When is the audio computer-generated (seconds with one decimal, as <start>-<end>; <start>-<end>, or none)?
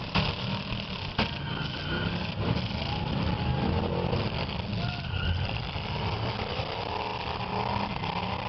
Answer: none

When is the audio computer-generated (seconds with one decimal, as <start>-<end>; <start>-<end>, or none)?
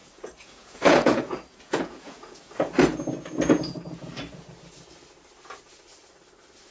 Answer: 0.0-2.4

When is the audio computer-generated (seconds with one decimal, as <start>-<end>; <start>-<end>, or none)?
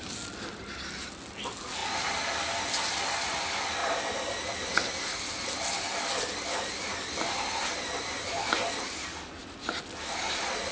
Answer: none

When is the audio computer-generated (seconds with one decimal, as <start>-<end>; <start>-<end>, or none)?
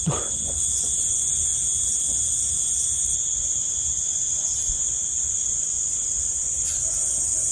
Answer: 0.0-1.5; 2.4-7.5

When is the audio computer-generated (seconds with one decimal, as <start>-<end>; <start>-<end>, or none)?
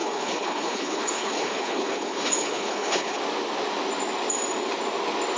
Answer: 0.0-3.2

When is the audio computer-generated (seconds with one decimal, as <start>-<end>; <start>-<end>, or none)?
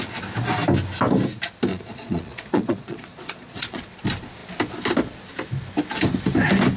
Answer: 1.7-3.9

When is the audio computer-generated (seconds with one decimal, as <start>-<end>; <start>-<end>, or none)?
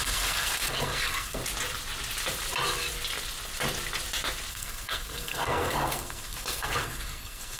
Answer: 0.0-1.4; 4.5-7.6